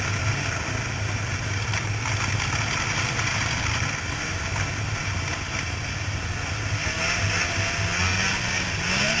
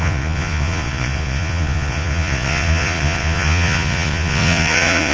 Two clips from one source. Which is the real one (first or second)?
first